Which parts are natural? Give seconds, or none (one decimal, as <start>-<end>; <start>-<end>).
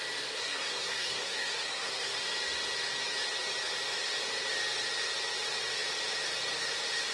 0.0-0.4; 2.2-7.1